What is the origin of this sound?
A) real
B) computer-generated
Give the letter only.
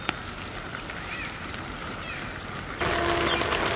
A